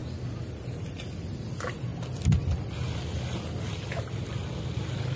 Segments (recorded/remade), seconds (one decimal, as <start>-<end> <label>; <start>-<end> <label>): 0.0-0.9 remade; 0.9-5.2 recorded